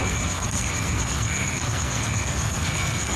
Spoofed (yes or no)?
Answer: yes